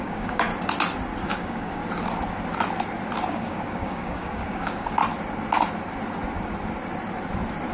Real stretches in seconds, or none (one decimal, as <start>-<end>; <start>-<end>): 0.5-1.3; 1.8-3.3; 5.0-7.7